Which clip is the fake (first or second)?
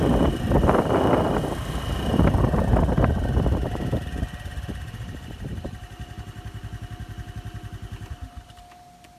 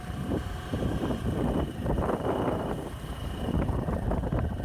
second